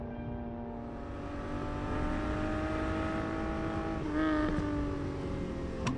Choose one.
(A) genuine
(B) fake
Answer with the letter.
A